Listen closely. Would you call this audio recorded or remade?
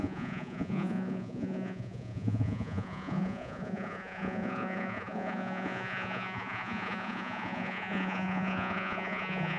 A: remade